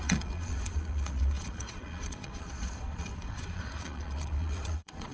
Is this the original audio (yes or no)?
no